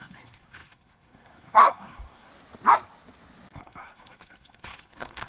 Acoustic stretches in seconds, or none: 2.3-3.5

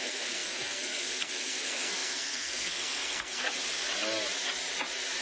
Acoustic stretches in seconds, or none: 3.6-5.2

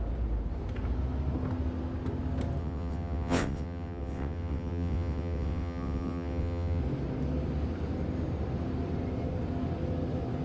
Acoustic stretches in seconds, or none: 0.0-2.6; 6.8-10.4

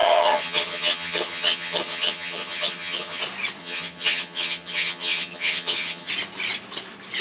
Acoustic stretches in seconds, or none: 3.2-3.6; 6.1-7.2

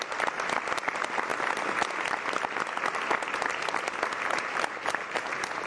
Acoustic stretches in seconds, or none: 0.0-5.7

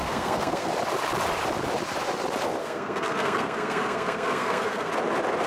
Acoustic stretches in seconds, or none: 0.7-2.6; 4.9-5.5

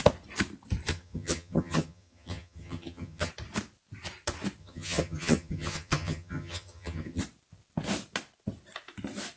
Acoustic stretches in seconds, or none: 0.0-0.9; 3.3-4.6; 7.2-9.4

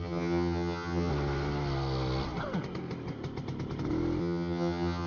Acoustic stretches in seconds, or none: 1.1-4.2